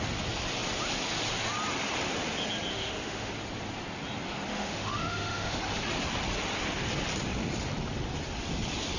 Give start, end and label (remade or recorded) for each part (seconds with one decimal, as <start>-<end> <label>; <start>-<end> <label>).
0.0-2.7 recorded; 2.7-3.3 remade; 3.3-4.5 recorded; 4.5-5.6 remade; 5.6-9.0 recorded